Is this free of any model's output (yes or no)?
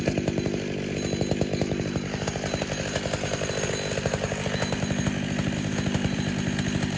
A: no